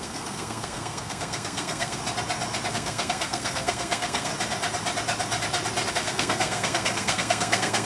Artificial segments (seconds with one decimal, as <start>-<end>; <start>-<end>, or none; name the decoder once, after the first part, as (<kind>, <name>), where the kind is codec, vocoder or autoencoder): 0.0-2.0 (codec, SNAC); 2.7-4.3; 5.9-7.8